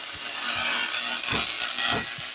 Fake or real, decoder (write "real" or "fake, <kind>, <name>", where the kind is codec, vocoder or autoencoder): real